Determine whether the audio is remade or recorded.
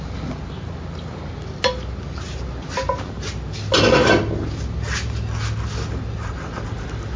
recorded